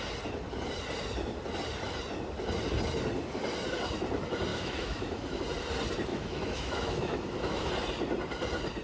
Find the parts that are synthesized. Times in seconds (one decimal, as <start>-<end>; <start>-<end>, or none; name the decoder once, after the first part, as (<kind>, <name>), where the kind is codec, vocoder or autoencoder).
4.5-5.4 (autoencoder, DAC-VAE); 6.1-7.7